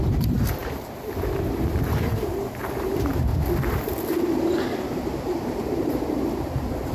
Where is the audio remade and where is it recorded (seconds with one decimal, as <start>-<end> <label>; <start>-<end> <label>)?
0.0-3.3 remade; 3.3-5.2 recorded; 5.2-6.9 remade